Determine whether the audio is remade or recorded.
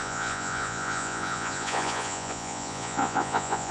remade